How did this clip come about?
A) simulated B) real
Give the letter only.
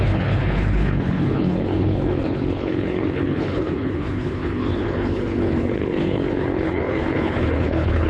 A